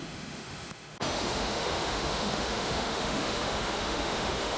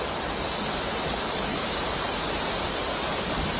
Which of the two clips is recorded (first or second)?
second